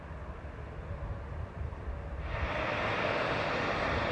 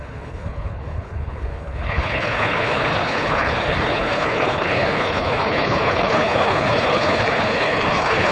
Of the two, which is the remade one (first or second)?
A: second